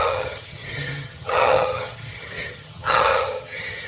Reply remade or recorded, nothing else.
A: remade